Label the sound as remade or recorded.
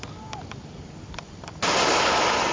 remade